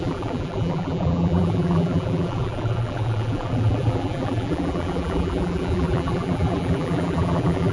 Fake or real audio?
fake